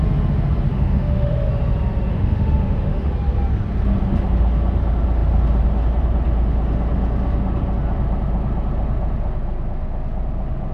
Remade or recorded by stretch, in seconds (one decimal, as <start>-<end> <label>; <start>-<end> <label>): 0.0-0.7 recorded; 0.7-1.5 remade; 1.5-2.1 recorded; 2.1-3.1 remade; 3.1-10.7 recorded